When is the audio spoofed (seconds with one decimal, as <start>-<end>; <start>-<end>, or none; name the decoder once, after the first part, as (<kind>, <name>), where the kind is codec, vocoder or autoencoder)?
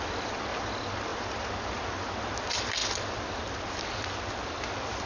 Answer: none